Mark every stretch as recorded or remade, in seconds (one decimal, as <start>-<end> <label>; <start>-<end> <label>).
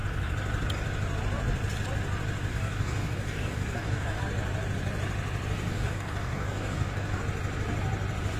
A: 0.0-2.5 recorded; 2.5-4.2 remade; 4.2-5.7 recorded; 5.7-7.2 remade; 7.2-8.4 recorded